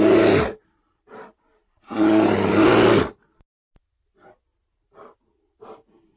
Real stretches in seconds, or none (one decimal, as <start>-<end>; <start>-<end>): 0.0-1.5; 2.7-6.2